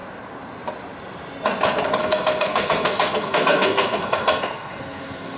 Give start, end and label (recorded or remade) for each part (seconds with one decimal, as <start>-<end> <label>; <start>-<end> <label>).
0.0-2.0 recorded; 2.0-5.4 remade